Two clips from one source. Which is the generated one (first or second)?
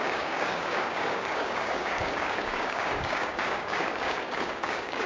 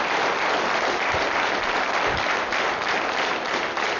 first